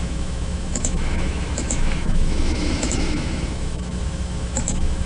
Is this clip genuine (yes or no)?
no